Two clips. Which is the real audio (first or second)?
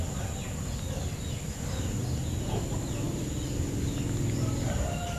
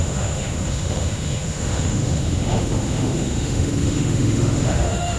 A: first